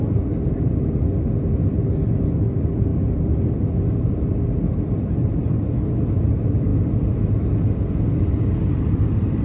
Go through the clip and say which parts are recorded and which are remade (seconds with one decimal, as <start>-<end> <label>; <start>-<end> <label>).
0.0-9.4 recorded